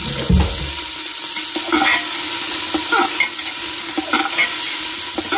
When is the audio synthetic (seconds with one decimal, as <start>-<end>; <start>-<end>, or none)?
none